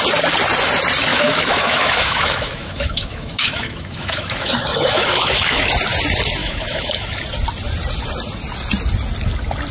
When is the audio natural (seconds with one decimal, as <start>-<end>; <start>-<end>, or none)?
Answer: 0.0-1.1; 5.7-6.4; 7.2-9.7